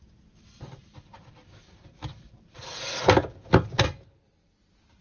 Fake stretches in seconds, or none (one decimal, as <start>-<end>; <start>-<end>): 0.0-3.0